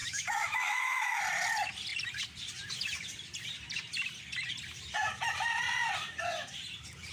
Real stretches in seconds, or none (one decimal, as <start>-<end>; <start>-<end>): 1.2-7.1